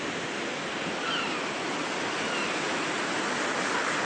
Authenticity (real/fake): real